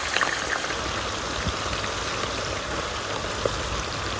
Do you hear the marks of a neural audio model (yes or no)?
no